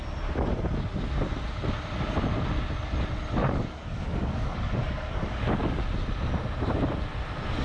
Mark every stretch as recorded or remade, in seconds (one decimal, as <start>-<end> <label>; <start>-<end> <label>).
0.0-3.4 recorded; 3.4-5.8 remade; 5.8-7.6 recorded